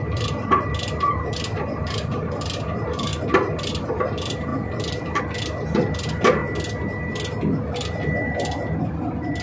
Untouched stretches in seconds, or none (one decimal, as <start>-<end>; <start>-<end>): 6.4-7.7